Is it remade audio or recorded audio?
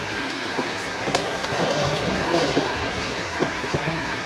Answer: remade